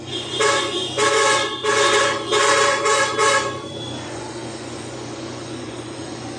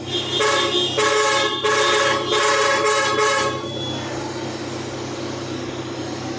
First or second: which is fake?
first